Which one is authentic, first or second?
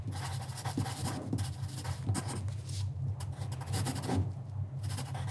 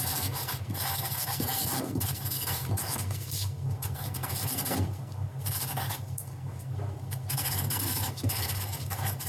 first